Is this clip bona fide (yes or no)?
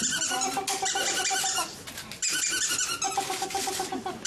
yes